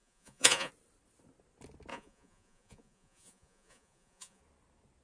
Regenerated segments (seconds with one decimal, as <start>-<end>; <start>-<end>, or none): 0.0-0.7; 1.9-4.4